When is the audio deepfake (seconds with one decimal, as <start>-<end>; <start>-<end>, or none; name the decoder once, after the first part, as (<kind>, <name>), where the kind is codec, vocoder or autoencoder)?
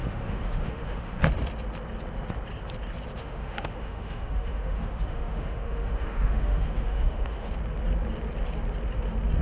0.0-1.3 (autoencoder, DAC-VAE); 3.2-7.5